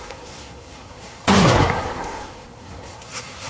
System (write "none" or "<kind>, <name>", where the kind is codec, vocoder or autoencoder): codec, SNAC